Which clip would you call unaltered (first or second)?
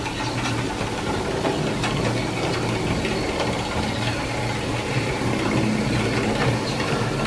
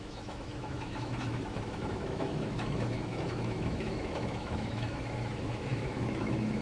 first